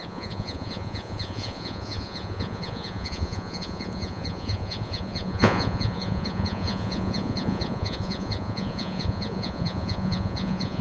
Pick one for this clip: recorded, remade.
remade